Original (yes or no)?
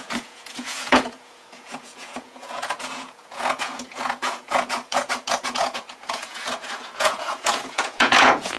no